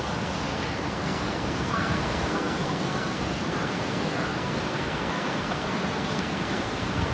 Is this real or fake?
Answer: fake